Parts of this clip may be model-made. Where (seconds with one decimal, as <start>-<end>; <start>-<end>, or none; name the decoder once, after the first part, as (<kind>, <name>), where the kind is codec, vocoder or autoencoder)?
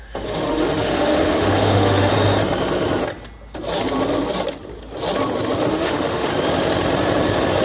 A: 0.0-2.1 (autoencoder, DAC-VAE); 5.7-6.3